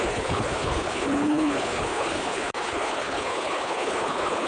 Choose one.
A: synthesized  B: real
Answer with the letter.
A